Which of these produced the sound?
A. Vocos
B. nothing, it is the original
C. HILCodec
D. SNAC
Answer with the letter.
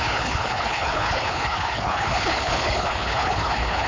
C